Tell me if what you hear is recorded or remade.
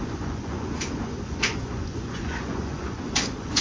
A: remade